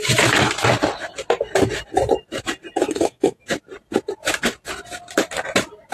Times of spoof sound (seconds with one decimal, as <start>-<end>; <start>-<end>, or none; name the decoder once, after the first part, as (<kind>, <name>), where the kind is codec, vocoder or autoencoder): 2.8-3.4 (codec, SNAC)